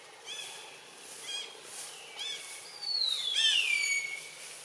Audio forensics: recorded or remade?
recorded